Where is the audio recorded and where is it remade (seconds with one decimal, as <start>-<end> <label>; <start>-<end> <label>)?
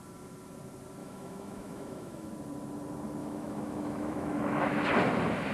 0.0-1.0 recorded; 1.0-2.3 remade; 2.3-3.2 recorded; 3.2-4.8 remade; 4.8-5.5 recorded